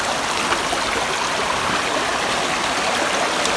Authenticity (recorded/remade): recorded